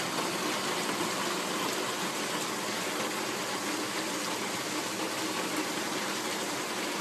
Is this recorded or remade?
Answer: recorded